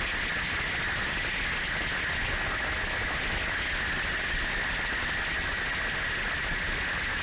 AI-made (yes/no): no